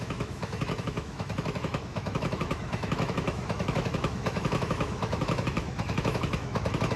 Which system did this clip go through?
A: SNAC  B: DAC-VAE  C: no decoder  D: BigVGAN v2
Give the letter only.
B